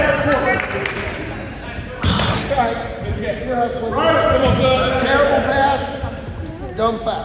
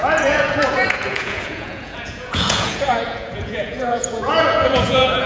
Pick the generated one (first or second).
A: second